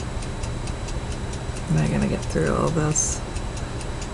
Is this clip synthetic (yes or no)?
yes